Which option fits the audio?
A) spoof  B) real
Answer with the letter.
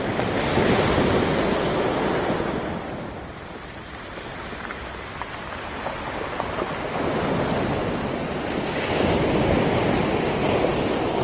B